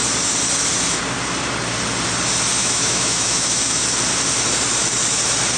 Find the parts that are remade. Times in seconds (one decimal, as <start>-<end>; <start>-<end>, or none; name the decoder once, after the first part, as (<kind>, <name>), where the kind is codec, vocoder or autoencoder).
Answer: 2.6-3.8 (autoencoder, DAC-VAE)